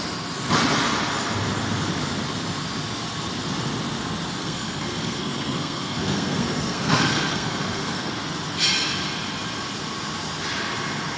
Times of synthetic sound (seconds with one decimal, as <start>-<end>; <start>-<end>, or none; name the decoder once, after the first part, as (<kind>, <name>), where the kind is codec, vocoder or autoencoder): 4.4-8.1 (codec, SNAC)